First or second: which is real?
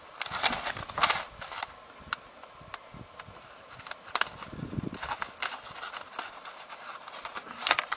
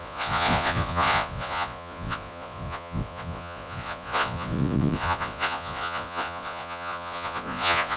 first